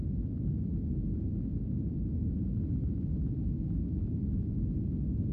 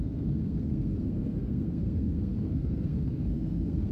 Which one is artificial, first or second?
second